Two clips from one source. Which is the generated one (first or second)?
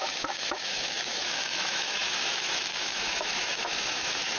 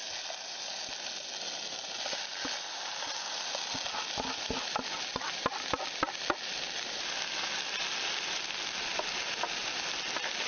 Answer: first